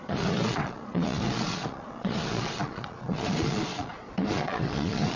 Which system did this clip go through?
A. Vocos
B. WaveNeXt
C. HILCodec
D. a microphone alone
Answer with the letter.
A